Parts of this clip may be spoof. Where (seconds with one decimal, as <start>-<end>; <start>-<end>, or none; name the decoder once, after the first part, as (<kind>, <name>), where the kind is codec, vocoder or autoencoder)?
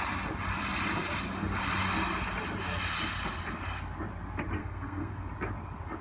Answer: 4.6-5.1 (codec, SNAC)